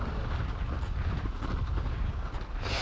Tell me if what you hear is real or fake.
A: real